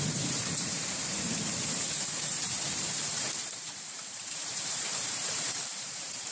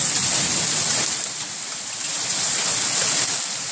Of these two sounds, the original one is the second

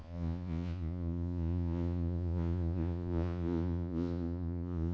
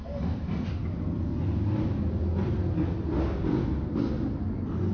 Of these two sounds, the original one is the second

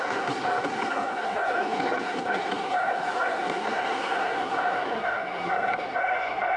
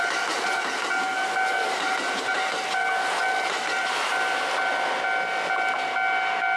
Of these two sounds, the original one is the second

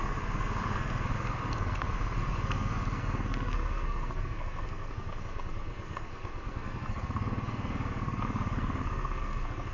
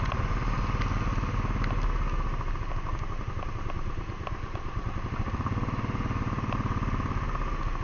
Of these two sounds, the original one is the second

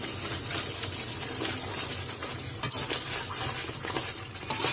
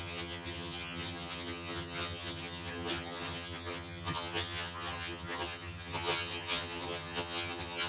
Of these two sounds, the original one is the first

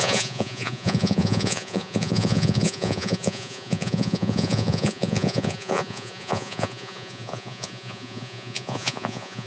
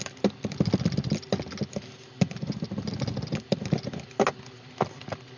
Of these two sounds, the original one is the second